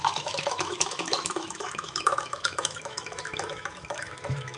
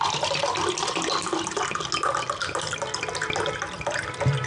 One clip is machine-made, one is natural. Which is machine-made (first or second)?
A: first